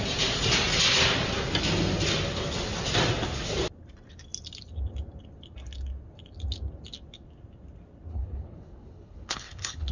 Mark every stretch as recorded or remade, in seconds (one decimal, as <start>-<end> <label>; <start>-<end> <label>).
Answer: 0.0-8.1 recorded; 8.1-9.9 remade